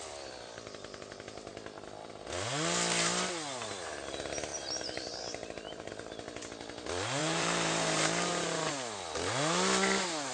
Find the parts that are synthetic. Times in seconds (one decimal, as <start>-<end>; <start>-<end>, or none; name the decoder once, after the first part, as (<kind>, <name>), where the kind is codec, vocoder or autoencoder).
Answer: 4.5-5.9 (vocoder, BigVGAN v2); 7.2-8.7